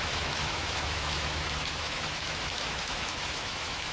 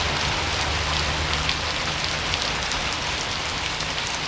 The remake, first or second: first